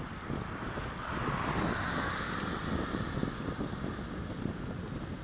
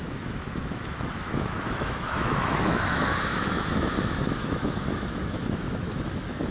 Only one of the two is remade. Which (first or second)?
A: second